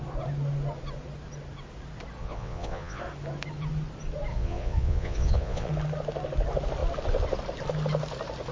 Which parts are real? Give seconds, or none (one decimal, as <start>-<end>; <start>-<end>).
0.0-2.2; 3.0-4.3; 5.7-8.5